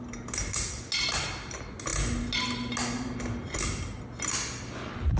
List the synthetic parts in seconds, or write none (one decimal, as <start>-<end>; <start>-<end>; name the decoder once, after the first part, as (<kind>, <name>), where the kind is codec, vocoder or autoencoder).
none